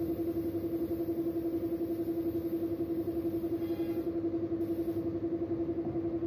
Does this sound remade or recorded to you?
recorded